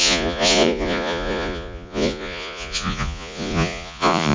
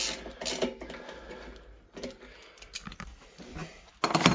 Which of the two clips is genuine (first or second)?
second